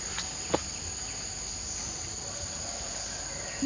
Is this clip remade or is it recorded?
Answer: recorded